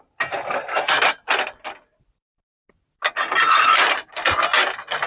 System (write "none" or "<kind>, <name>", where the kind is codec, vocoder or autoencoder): none